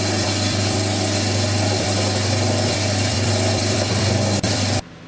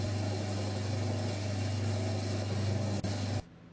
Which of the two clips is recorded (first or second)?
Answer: second